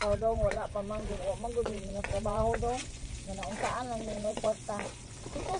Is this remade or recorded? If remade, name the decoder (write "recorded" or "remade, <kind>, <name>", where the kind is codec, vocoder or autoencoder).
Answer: remade, vocoder, Vocos